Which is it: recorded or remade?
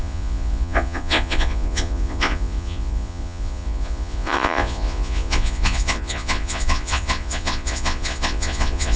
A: remade